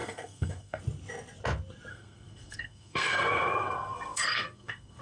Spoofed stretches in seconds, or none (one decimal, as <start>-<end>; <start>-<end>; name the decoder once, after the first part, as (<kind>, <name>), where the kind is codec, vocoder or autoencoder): 0.0-0.8 (codec, SNAC); 1.9-5.0